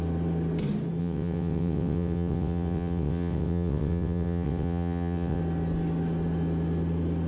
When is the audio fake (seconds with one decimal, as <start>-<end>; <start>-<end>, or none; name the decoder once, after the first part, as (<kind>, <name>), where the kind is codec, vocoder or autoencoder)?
1.0-5.4 (vocoder, WaveNeXt)